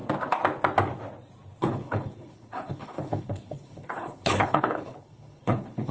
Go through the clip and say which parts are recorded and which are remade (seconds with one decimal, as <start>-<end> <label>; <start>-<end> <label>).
0.0-1.6 recorded; 1.6-5.9 remade